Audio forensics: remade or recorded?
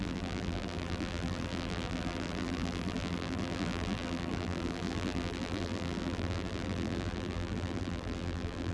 remade